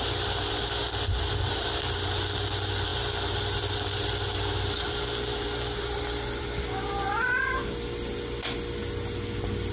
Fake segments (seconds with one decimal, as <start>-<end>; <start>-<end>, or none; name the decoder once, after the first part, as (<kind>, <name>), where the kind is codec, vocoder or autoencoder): none